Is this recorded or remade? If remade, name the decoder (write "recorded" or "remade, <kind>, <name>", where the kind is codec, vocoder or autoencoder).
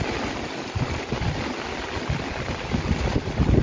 recorded